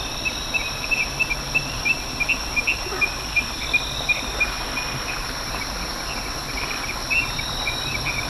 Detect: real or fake real